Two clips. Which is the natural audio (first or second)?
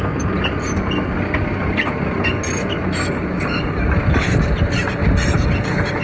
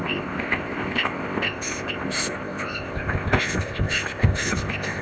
first